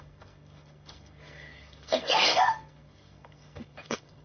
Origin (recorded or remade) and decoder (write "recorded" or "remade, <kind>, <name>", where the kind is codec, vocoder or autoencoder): remade, codec, SNAC